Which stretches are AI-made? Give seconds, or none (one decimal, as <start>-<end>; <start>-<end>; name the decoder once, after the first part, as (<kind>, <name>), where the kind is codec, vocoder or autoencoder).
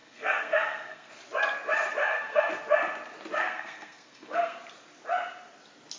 0.0-1.1 (codec, SNAC); 2.0-2.5; 3.4-4.6